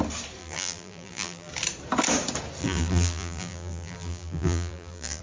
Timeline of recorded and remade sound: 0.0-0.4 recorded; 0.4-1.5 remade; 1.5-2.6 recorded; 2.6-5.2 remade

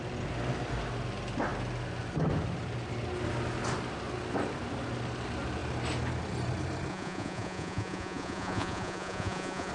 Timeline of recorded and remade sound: 0.0-6.9 recorded; 6.9-9.7 remade